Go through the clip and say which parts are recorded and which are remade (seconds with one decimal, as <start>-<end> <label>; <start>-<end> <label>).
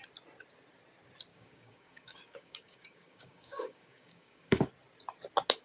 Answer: 0.0-1.3 recorded; 1.3-4.7 remade; 4.7-5.6 recorded